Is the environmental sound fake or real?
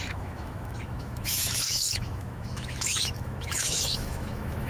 fake